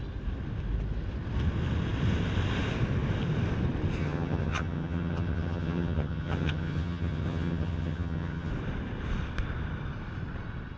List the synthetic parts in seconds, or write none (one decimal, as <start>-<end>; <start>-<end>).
4.0-8.5